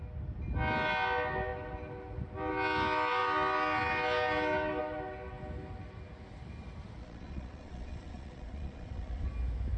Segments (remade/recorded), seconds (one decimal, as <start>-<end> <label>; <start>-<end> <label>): 0.0-7.0 recorded; 7.0-9.3 remade; 9.3-9.8 recorded